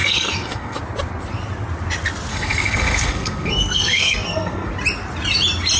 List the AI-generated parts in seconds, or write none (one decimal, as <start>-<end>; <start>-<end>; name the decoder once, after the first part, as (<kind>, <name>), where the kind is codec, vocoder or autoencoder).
0.0-0.8 (codec, SNAC); 2.3-4.7